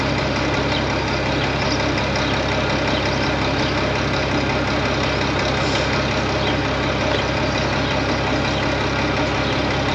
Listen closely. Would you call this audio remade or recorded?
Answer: recorded